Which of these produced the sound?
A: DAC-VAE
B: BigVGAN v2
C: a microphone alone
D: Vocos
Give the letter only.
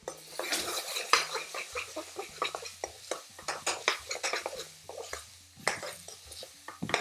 C